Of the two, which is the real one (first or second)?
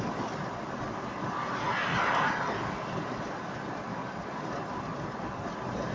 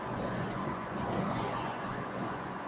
first